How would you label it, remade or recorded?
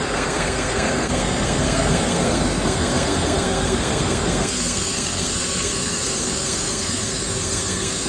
remade